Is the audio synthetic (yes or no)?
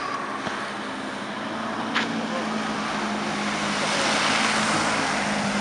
no